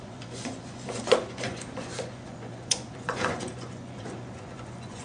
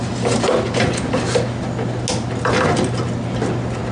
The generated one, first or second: first